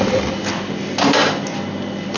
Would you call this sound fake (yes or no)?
no